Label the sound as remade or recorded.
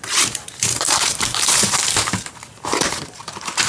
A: remade